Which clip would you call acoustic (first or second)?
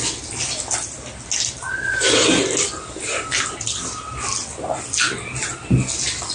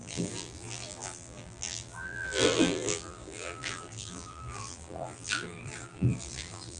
first